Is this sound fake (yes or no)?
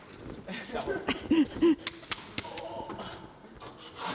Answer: no